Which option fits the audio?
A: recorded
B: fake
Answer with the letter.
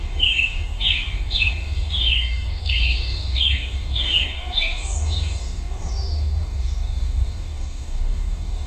B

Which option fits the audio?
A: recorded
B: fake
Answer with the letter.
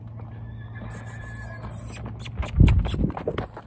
A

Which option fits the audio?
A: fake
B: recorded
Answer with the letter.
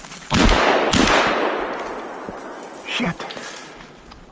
B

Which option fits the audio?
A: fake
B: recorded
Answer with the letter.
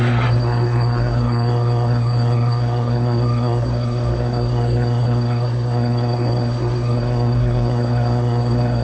A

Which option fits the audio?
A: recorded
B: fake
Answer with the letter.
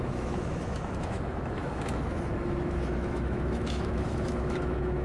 B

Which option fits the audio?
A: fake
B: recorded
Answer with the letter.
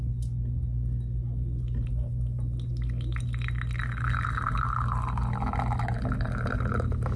B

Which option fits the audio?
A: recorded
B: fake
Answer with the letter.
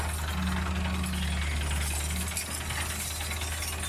A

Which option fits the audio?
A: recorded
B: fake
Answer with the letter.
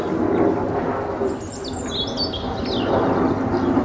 A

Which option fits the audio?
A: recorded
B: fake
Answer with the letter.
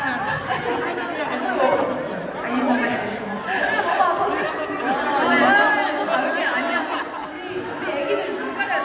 A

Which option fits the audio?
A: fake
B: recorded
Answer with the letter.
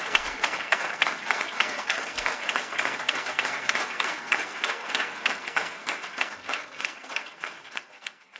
A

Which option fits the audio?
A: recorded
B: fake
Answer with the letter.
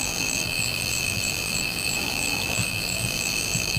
B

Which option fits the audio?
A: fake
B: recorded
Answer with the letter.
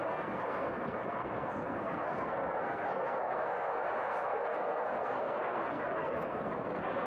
A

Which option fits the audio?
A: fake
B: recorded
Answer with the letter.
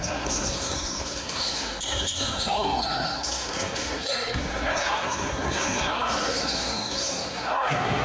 A